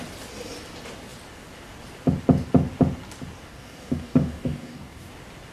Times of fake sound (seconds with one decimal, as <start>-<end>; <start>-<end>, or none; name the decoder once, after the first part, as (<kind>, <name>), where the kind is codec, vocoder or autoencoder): 3.5-5.1 (codec, DAC)